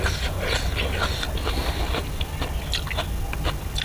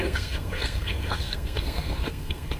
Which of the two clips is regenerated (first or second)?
second